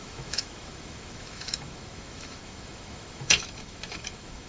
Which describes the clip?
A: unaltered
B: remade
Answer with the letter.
B